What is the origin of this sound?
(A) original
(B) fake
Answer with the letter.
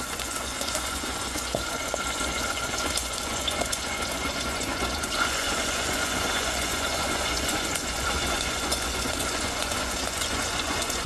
B